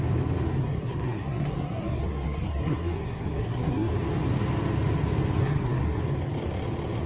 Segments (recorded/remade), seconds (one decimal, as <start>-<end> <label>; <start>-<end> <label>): 0.0-0.6 recorded; 0.6-3.9 remade; 3.9-5.4 recorded; 5.4-6.0 remade; 6.0-7.1 recorded